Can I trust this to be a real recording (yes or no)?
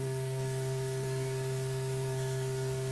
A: no